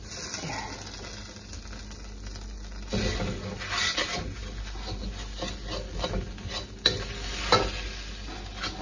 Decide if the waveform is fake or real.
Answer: real